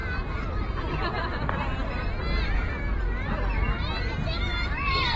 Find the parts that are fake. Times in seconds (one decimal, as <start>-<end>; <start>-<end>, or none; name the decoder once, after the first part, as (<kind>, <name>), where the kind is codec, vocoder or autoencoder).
4.4-5.2 (vocoder, BigVGAN v2)